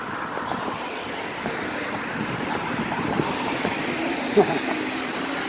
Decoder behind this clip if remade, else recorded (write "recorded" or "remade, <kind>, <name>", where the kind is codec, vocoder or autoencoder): recorded